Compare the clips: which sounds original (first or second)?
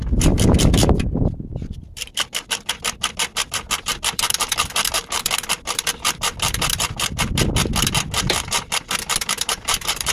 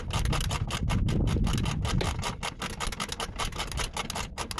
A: second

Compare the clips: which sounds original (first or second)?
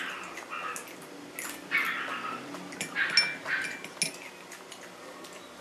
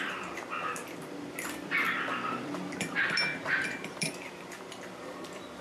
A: first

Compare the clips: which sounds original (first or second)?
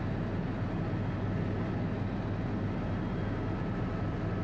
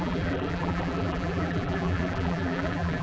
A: first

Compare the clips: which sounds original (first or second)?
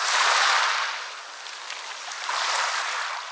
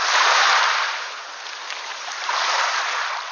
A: first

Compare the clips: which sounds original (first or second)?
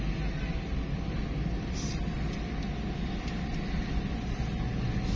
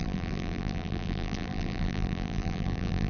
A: first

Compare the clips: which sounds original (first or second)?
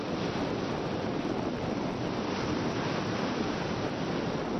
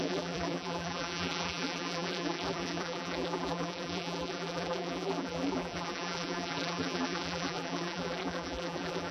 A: first